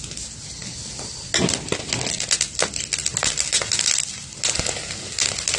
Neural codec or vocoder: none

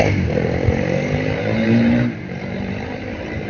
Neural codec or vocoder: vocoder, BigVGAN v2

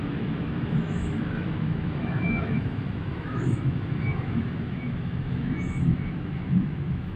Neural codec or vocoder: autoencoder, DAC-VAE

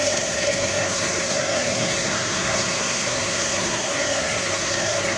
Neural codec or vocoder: codec, SNAC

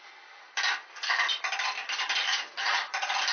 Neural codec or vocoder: none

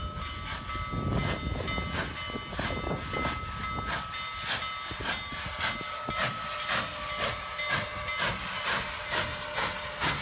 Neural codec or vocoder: none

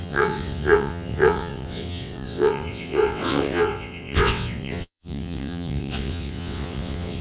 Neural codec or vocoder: vocoder, WaveNeXt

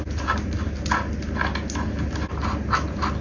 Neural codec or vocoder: none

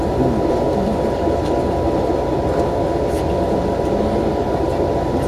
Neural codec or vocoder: none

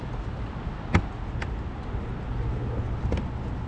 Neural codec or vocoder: none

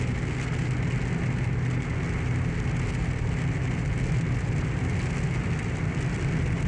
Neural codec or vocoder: none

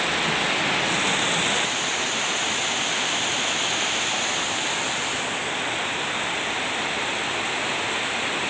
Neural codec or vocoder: none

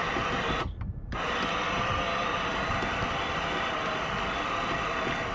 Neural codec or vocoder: none